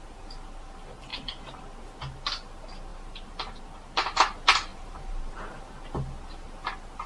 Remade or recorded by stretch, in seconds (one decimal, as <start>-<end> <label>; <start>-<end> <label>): 0.0-1.1 recorded; 1.1-1.6 remade; 1.6-2.9 recorded; 2.9-3.6 remade; 3.6-4.7 recorded; 4.7-5.6 remade; 5.6-7.1 recorded